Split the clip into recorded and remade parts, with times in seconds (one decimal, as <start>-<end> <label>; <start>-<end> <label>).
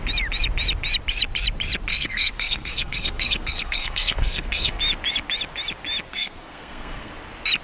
0.0-1.9 recorded; 1.9-4.8 remade; 4.8-6.1 recorded; 6.1-7.1 remade; 7.1-7.6 recorded